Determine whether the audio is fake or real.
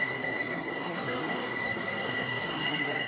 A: fake